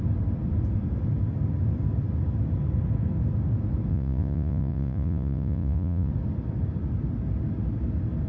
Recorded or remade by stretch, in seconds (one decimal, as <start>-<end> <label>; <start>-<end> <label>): 0.0-3.9 recorded; 3.9-6.1 remade; 6.1-8.3 recorded